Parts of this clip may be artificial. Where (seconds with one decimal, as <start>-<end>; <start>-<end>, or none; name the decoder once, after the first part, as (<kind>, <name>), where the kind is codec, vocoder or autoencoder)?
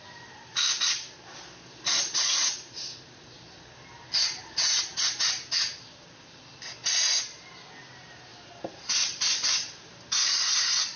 none